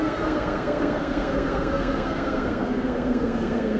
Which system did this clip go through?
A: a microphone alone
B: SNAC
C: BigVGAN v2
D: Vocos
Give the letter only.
B